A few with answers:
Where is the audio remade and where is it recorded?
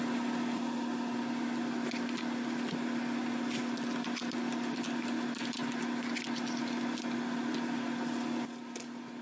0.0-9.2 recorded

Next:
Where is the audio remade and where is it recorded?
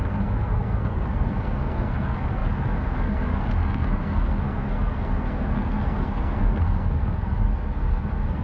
0.0-8.4 remade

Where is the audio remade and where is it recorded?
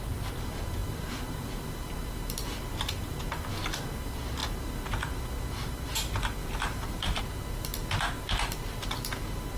0.0-6.4 recorded; 6.4-7.2 remade; 7.2-9.6 recorded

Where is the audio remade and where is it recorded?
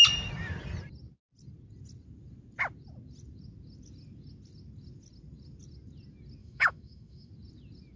0.0-6.4 recorded; 6.4-7.3 remade; 7.3-8.0 recorded